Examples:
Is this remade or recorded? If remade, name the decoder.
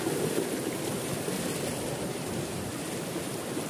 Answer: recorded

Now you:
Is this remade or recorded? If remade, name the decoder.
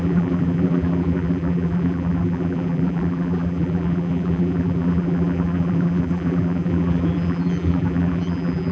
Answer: remade, vocoder, BigVGAN v2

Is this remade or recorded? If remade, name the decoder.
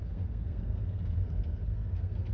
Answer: remade, codec, SNAC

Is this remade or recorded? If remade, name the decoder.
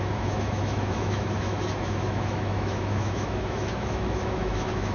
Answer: remade, autoencoder, DAC-VAE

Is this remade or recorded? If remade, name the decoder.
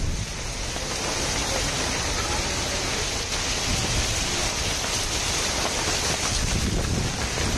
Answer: recorded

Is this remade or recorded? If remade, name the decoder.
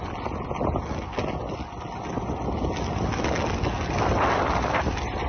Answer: recorded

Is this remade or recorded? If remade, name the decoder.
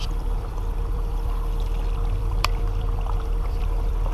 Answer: remade, vocoder, BigVGAN v2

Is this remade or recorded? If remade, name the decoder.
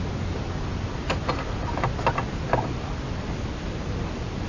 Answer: recorded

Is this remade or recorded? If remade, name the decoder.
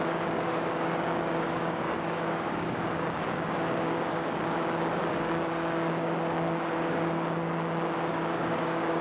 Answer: remade, codec, DAC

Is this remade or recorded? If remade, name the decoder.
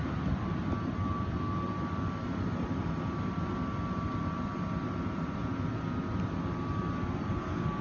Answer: recorded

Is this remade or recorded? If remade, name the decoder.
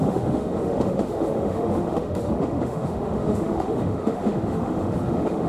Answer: remade, autoencoder, DAC-VAE